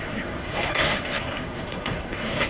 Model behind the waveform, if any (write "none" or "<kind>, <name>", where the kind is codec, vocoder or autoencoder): codec, SNAC